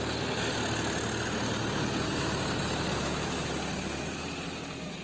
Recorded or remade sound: recorded